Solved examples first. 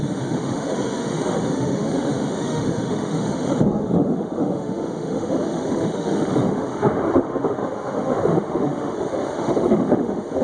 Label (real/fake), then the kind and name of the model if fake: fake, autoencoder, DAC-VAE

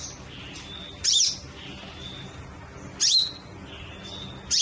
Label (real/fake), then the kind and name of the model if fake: real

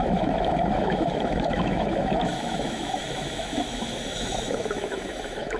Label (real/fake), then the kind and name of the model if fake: fake, autoencoder, DAC-VAE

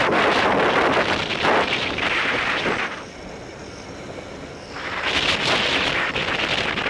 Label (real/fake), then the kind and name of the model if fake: real